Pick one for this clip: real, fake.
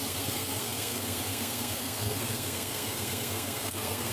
fake